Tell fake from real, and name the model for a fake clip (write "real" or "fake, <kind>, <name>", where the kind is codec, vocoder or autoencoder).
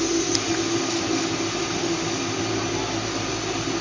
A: real